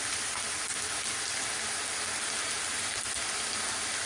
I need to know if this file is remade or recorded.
recorded